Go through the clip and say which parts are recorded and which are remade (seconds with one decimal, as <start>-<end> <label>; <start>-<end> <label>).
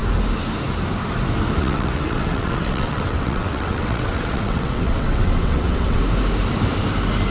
0.0-1.6 recorded; 1.6-6.0 remade; 6.0-7.3 recorded